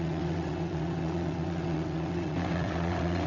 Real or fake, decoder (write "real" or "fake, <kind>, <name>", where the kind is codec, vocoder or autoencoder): fake, vocoder, WaveNeXt